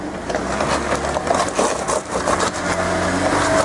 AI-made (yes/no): no